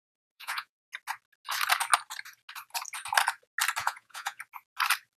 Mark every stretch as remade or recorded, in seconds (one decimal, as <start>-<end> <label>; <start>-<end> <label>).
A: 0.0-0.8 remade; 0.8-3.8 recorded; 3.8-4.4 remade; 4.4-5.2 recorded